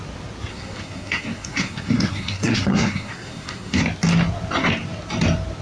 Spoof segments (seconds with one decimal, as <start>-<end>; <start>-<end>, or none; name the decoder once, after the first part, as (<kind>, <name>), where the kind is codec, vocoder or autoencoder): 0.5-3.8 (codec, SNAC)